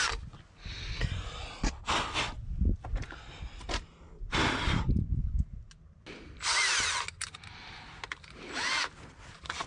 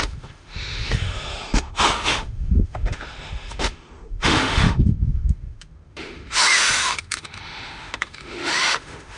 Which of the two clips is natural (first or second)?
first